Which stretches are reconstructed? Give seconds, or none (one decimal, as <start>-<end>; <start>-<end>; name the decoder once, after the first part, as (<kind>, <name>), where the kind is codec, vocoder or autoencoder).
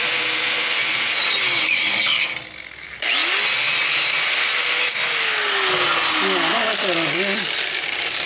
none